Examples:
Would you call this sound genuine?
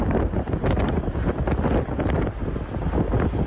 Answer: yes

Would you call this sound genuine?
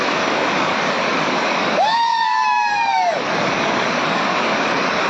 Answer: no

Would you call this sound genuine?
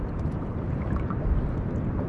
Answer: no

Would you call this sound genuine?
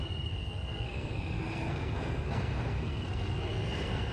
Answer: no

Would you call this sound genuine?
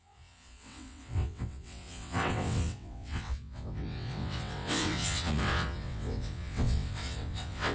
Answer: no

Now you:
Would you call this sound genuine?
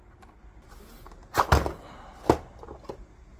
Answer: yes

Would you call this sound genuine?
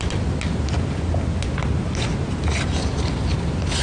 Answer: yes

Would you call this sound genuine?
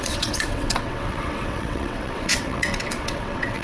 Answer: no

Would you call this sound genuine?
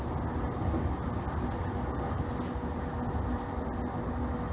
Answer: yes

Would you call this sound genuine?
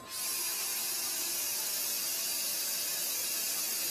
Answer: yes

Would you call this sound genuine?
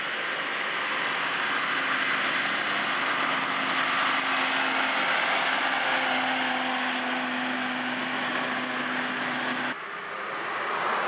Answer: yes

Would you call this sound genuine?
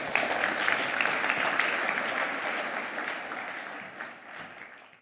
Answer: yes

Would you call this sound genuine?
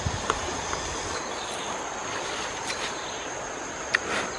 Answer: no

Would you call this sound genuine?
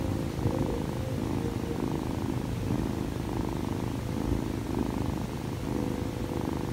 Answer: yes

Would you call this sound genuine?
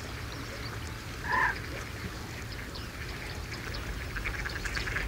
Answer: yes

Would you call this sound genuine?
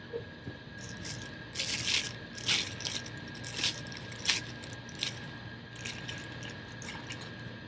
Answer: yes